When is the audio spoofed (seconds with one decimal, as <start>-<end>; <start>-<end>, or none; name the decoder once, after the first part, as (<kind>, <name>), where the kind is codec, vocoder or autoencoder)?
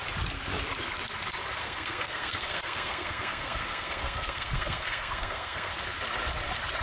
1.6-5.7 (codec, SNAC)